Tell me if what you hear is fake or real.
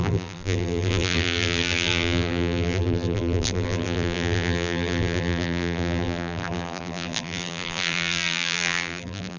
fake